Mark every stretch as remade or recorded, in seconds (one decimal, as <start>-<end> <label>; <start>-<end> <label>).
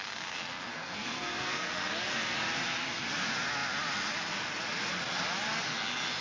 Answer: 0.0-0.7 recorded; 0.7-1.7 remade; 1.7-6.2 recorded